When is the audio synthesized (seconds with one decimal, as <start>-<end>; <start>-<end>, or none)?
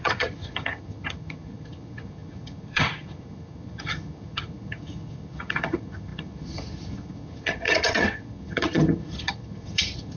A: 0.0-10.2